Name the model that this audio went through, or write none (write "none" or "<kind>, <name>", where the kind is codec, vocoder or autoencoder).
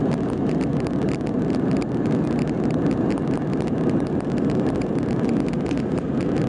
vocoder, BigVGAN v2